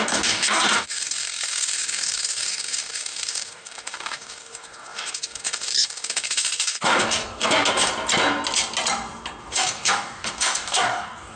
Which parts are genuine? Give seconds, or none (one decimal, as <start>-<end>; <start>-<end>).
7.9-9.4